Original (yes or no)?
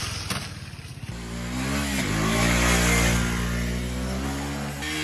yes